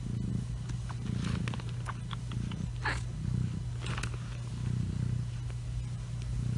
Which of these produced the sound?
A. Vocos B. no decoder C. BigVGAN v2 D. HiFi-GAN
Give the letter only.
B